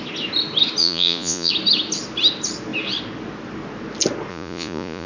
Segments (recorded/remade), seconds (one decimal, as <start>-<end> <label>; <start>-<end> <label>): 0.0-0.8 recorded; 0.8-1.5 remade; 1.5-4.3 recorded; 4.3-5.1 remade